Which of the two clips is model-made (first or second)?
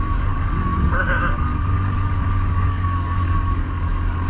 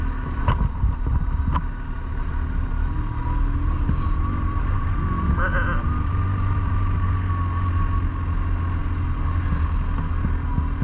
first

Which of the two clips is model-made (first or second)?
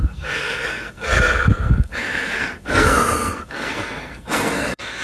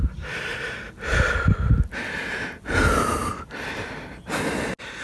first